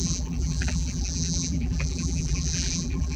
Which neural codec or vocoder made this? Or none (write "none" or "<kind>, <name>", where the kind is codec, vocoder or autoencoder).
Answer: vocoder, BigVGAN v2